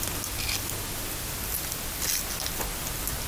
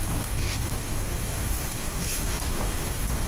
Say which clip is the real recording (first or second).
first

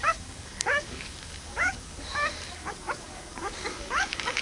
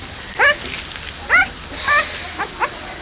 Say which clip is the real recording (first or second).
second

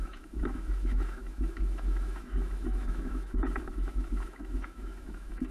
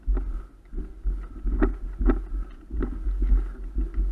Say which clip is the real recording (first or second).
second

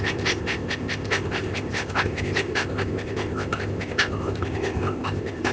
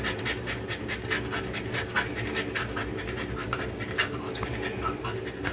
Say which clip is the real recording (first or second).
second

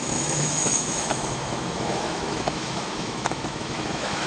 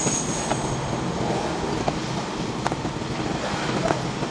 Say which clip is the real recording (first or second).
second